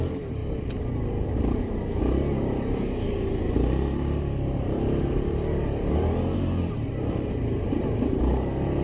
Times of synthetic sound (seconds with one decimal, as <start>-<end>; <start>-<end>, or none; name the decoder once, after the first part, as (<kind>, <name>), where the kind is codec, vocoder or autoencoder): 0.0-0.4 (vocoder, BigVGAN v2); 2.4-8.8